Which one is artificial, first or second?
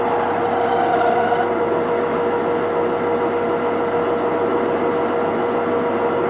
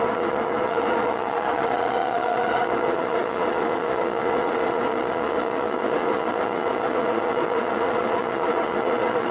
second